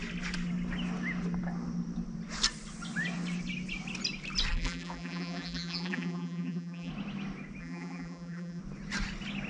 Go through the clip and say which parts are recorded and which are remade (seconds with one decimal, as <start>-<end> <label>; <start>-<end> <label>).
0.0-4.5 recorded; 4.5-6.9 remade; 6.9-7.6 recorded; 7.6-8.6 remade; 8.6-9.5 recorded

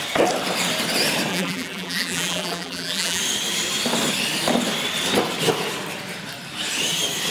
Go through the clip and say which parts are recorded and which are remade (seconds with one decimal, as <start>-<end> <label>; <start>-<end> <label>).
0.0-1.3 recorded; 1.3-3.2 remade; 3.2-7.3 recorded